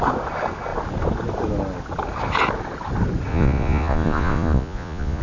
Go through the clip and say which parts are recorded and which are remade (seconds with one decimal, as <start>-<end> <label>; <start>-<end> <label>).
0.0-3.3 recorded; 3.3-5.2 remade